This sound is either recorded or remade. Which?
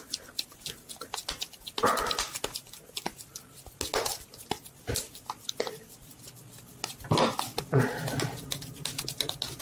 recorded